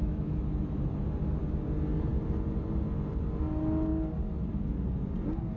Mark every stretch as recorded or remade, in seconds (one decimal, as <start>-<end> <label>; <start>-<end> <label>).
0.0-0.8 remade; 0.8-5.6 recorded